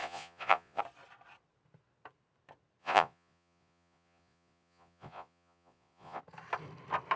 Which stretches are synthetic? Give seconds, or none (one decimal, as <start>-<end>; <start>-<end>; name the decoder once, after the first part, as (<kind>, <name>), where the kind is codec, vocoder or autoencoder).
0.0-0.8 (vocoder, Vocos); 2.8-6.2